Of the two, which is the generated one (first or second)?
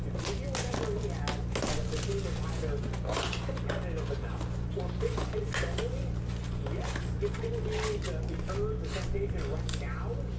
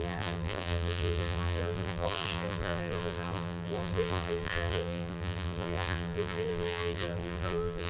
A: second